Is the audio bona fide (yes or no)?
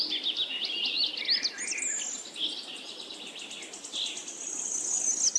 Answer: yes